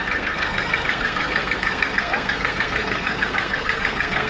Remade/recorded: remade